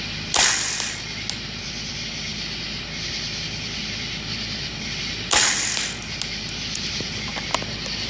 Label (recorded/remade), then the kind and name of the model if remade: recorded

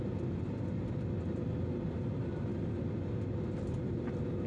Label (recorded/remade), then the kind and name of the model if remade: recorded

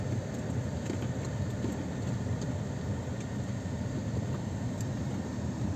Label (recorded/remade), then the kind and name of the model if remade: recorded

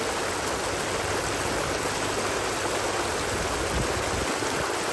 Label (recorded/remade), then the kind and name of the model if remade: recorded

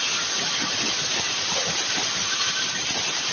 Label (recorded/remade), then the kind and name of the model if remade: recorded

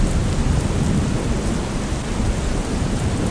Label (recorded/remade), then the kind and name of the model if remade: recorded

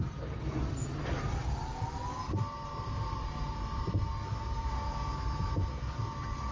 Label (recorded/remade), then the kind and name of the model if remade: recorded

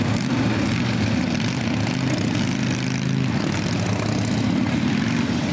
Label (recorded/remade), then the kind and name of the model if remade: recorded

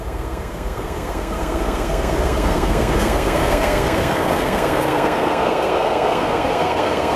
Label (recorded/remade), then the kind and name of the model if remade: remade, codec, SNAC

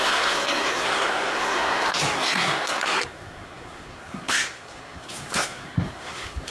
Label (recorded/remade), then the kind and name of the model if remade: remade, codec, SNAC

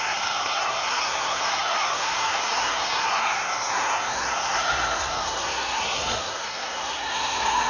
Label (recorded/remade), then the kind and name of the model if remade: remade, codec, SNAC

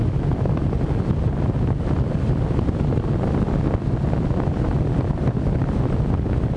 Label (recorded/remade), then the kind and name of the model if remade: recorded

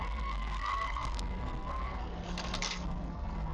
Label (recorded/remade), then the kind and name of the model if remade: remade, codec, SNAC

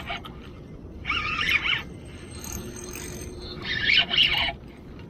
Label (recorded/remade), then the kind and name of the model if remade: recorded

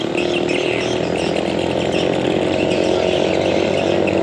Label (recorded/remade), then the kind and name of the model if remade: recorded